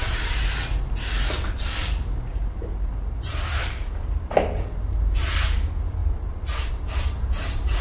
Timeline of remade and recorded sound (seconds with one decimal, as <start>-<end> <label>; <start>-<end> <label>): 0.0-0.7 remade; 0.7-1.9 recorded; 1.9-6.0 remade; 6.0-6.7 recorded; 6.7-7.8 remade